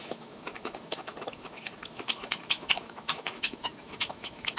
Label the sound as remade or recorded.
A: remade